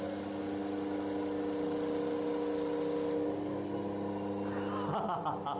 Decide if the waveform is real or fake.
real